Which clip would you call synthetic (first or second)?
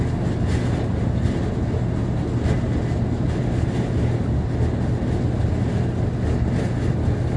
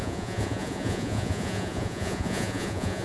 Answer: second